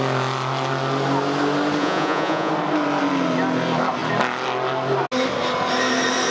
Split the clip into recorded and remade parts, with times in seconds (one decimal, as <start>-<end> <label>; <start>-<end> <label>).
0.0-1.8 recorded; 1.8-2.5 remade; 2.5-6.3 recorded